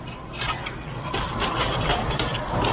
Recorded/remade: remade